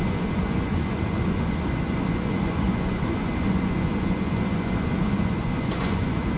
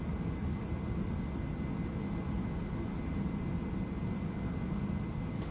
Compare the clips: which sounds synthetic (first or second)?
first